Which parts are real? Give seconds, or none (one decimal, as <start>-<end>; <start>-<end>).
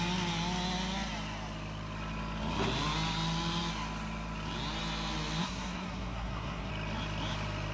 0.0-5.4; 6.7-7.7